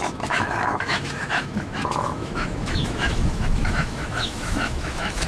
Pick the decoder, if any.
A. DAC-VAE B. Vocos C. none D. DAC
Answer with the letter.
A